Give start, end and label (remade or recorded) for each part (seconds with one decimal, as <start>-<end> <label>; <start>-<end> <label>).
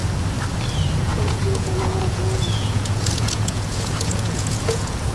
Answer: 0.0-1.0 recorded; 1.0-5.1 remade